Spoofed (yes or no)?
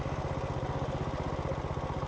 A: no